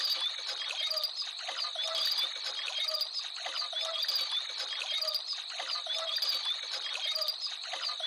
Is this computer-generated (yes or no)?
no